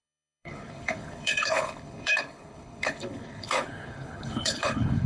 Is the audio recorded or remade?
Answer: remade